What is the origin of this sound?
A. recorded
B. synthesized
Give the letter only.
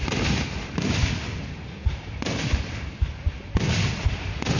A